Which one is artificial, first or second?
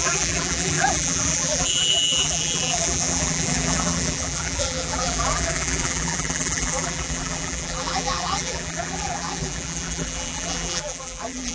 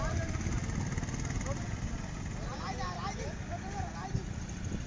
first